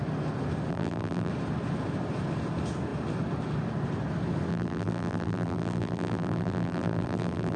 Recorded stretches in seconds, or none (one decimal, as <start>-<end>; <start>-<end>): 0.0-0.7; 1.3-4.5